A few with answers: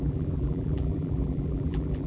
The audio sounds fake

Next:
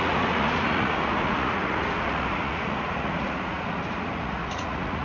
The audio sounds fake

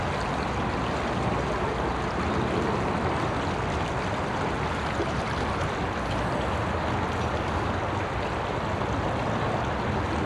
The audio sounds real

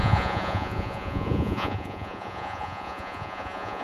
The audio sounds fake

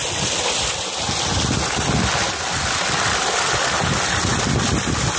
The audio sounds real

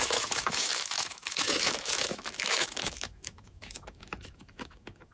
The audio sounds fake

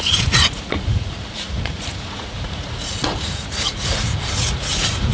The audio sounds fake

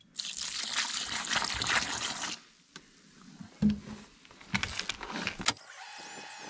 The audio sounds real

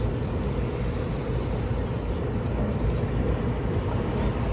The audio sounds real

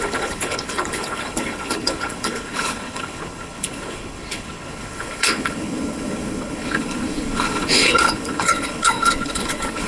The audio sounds fake